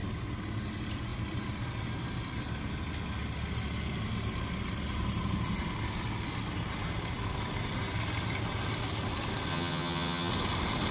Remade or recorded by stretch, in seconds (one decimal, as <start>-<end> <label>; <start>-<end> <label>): 0.0-9.5 recorded; 9.5-10.3 remade; 10.3-10.9 recorded